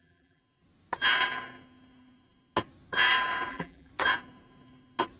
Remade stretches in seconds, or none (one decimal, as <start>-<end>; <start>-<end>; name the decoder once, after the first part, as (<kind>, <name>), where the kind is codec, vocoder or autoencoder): 0.0-0.4 (vocoder, BigVGAN v2); 3.5-3.9

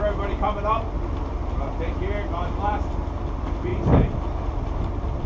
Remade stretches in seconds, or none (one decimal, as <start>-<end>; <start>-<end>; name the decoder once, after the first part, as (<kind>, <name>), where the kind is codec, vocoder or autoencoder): none

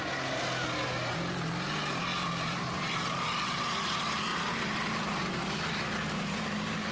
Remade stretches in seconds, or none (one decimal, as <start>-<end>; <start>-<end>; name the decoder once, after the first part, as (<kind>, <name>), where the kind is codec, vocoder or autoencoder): 2.1-3.6 (vocoder, BigVGAN v2); 4.3-5.9

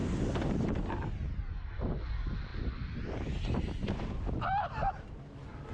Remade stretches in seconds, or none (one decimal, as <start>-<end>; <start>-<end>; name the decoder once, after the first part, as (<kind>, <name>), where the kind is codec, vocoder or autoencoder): 0.0-0.8 (vocoder, BigVGAN v2); 2.5-4.4

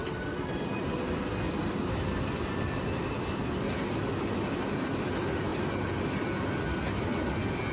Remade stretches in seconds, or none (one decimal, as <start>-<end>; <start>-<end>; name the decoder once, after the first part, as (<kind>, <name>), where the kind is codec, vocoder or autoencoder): 0.0-0.7 (vocoder, BigVGAN v2)

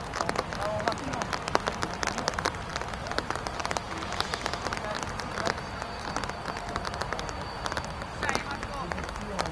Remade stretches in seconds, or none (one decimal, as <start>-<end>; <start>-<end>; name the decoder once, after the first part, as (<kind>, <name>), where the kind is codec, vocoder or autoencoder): none

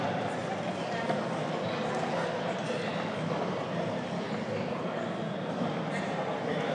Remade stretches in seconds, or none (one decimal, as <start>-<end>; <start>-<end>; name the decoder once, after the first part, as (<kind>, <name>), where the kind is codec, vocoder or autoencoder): none

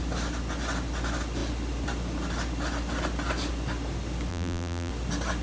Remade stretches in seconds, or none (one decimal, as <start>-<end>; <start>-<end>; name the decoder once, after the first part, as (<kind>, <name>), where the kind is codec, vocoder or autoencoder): 4.3-4.9 (vocoder, BigVGAN v2)